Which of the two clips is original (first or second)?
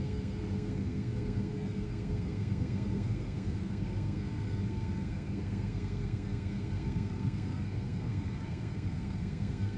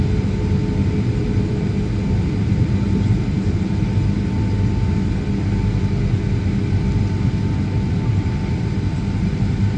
second